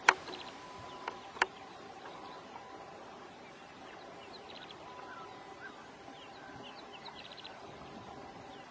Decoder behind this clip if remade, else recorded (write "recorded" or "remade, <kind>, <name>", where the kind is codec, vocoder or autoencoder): recorded